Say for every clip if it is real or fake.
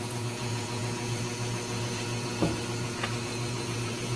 fake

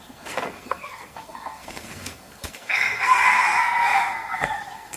fake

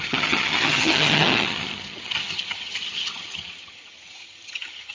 fake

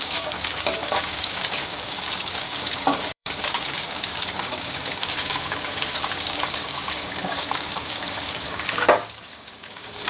fake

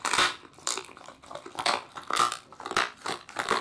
fake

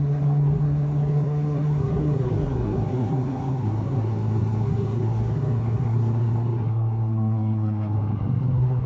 fake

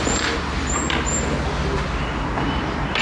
real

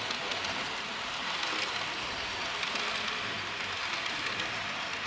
real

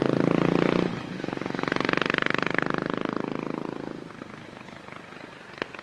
real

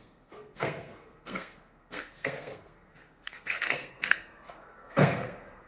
fake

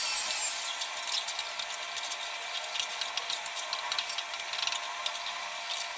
real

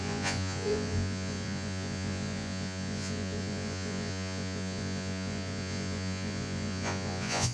fake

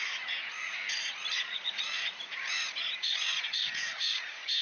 fake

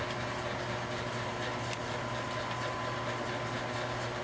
real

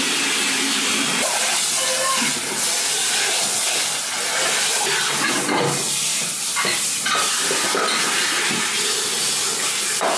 real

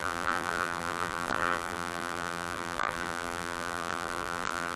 fake